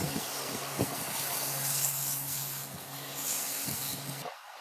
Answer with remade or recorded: remade